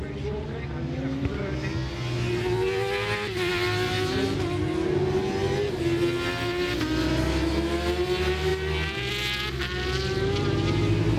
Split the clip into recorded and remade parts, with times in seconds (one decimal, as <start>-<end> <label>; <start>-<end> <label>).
0.0-11.2 recorded